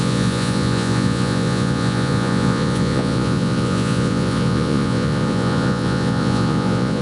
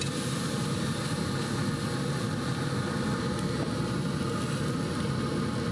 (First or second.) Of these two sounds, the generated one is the first